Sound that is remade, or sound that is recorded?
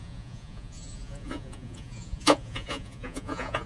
remade